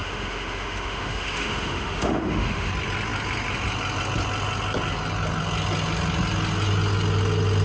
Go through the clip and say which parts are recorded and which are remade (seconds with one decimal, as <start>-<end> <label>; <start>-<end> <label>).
0.0-2.7 remade; 2.7-7.6 recorded